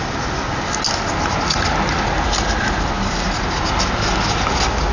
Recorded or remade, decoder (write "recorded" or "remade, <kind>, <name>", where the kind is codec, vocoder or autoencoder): recorded